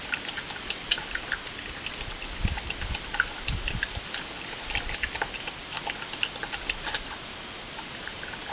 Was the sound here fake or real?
real